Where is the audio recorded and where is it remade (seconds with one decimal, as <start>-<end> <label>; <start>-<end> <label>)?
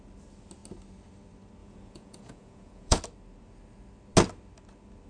0.0-1.6 recorded; 1.6-3.0 remade; 3.0-5.1 recorded